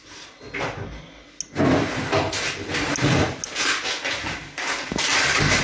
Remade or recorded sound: recorded